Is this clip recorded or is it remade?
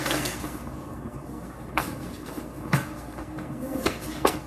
remade